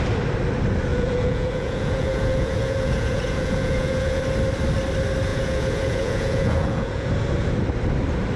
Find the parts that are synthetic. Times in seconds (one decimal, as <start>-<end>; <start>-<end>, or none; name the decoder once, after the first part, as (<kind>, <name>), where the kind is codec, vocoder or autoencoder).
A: 0.9-4.2 (vocoder, Vocos); 5.3-7.1